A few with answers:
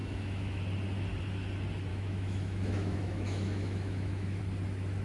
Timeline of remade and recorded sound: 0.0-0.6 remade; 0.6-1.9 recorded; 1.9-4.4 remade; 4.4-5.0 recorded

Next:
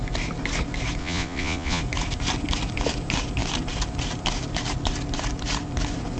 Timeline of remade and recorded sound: 0.0-1.0 recorded; 1.0-1.8 remade; 1.8-6.2 recorded

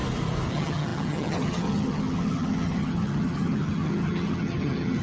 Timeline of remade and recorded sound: 0.0-0.5 recorded; 0.5-5.0 remade

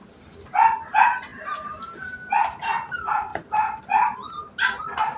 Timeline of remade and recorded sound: 0.0-3.3 remade; 3.3-3.8 recorded; 3.8-4.4 remade; 4.4-5.2 recorded